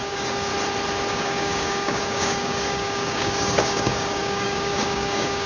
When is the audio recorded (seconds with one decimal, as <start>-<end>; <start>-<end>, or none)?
0.5-1.1